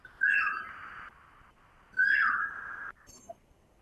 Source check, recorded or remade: remade